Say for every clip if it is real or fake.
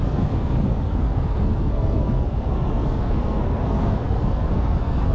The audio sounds fake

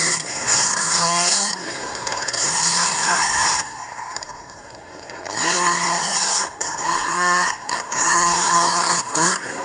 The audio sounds fake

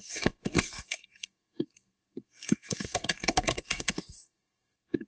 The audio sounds fake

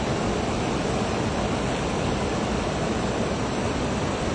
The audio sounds real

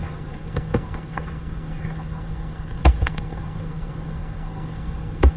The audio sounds fake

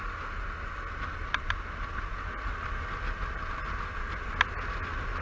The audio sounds real